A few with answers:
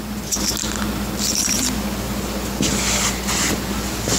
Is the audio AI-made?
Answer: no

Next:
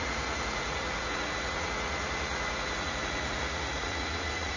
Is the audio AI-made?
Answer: yes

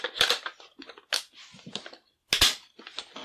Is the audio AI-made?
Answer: no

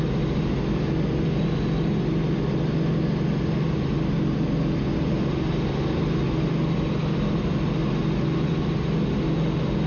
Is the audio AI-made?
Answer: no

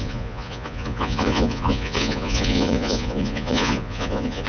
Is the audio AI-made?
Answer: yes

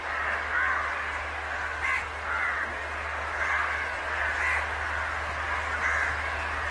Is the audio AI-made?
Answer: no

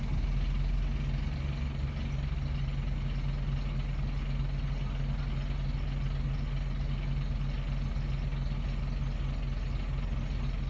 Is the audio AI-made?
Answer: no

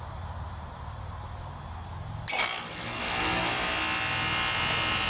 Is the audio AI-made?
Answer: no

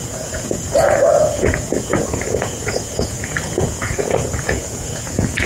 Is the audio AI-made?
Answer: yes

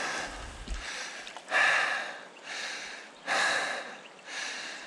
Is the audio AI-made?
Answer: no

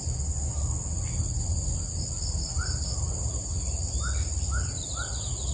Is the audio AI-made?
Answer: no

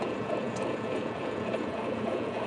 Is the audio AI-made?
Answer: yes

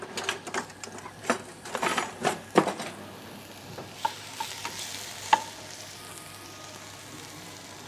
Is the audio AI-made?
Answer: no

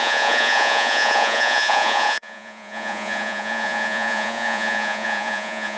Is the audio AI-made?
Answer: yes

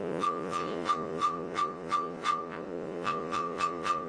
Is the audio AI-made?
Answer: yes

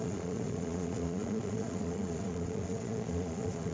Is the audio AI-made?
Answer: yes